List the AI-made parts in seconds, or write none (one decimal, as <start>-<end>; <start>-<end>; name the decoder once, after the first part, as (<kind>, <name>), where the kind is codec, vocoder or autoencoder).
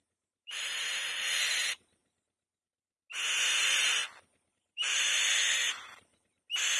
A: 0.0-2.0 (vocoder, BigVGAN v2); 3.5-4.0; 4.5-6.8